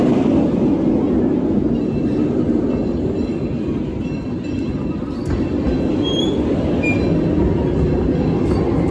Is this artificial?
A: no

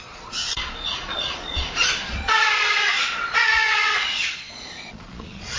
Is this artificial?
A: yes